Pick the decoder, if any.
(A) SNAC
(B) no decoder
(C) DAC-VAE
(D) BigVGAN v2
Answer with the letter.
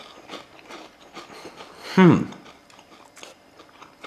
B